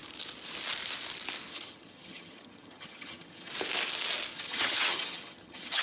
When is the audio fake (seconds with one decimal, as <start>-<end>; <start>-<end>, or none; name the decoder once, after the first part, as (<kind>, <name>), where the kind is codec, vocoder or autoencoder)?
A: 1.5-3.5 (vocoder, HiFi-GAN); 4.3-5.8